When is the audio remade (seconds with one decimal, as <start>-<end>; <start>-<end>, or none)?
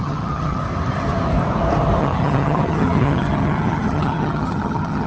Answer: 0.0-0.6; 2.0-5.1